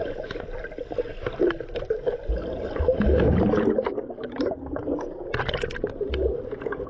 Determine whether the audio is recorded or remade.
recorded